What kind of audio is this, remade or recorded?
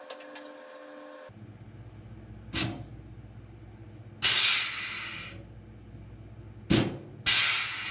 recorded